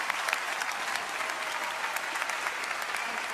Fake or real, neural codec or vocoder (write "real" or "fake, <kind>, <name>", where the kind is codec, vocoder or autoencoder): real